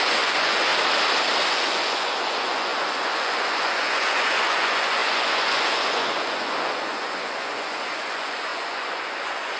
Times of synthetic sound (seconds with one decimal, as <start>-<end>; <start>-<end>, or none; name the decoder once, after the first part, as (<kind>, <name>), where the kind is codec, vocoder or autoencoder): 0.0-0.7 (vocoder, Vocos); 1.5-9.6